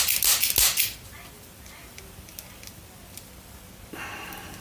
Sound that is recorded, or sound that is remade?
recorded